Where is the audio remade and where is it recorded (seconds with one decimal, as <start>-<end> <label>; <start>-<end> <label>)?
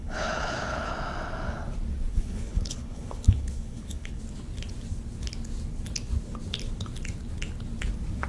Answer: 0.0-0.9 remade; 0.9-2.1 recorded; 2.1-4.2 remade; 4.2-8.3 recorded